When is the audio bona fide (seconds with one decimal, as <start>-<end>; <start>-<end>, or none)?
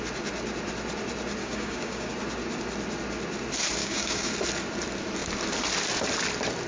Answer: 0.0-1.4; 2.1-3.8; 4.3-6.7